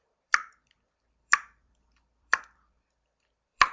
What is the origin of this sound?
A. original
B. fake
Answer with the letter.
B